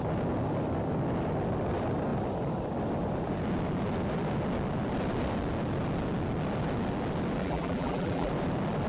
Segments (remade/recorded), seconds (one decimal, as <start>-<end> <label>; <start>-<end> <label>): 0.0-7.4 recorded; 7.4-8.3 remade; 8.3-8.9 recorded